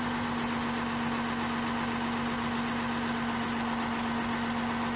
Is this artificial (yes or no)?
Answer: no